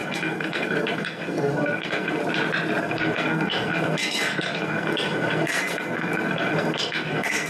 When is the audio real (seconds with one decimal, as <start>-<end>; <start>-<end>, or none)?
2.2-2.8